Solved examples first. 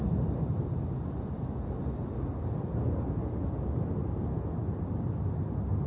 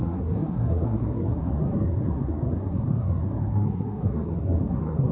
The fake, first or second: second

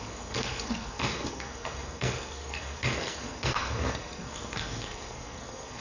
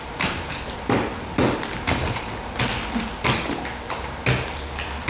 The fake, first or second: first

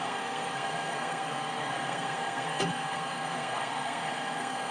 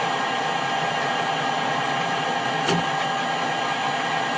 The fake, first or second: first